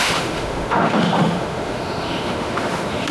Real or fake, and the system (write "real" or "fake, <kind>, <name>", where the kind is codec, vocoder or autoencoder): fake, autoencoder, DAC-VAE